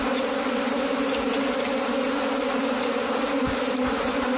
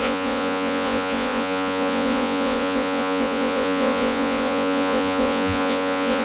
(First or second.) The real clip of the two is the first